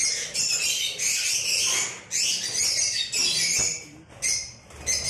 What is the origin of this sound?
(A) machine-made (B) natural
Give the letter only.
B